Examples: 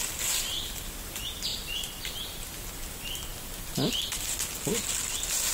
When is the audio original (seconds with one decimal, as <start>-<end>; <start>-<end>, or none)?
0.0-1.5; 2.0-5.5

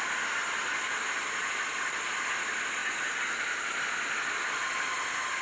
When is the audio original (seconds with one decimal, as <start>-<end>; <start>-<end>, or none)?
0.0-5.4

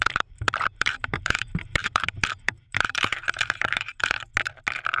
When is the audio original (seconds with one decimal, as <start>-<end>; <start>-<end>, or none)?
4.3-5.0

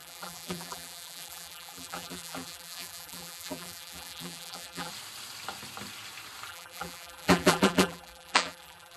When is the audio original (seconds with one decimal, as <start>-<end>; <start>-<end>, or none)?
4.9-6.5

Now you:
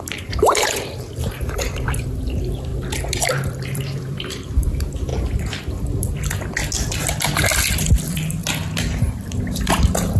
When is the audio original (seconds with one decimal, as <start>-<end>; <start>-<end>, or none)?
2.7-3.3; 5.1-6.9; 7.5-8.0; 8.4-9.0

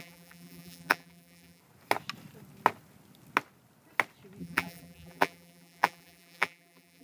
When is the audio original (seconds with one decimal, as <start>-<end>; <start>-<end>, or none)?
1.6-4.4